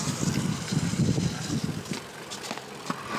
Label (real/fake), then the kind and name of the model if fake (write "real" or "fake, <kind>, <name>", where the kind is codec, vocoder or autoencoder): real